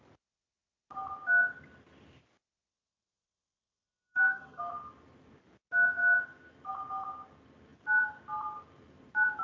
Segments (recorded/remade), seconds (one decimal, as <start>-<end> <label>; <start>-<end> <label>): 0.0-2.7 recorded; 2.7-4.6 remade; 4.6-9.4 recorded